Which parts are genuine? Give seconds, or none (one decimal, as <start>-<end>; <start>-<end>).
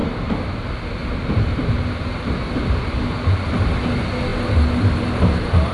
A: 0.6-1.0; 3.7-4.3